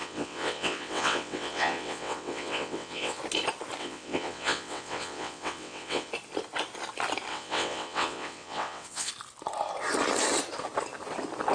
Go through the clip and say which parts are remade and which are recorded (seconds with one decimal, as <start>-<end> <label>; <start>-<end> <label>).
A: 0.0-3.2 remade; 3.2-3.8 recorded; 3.8-6.1 remade; 6.1-7.3 recorded; 7.3-9.1 remade; 9.1-11.5 recorded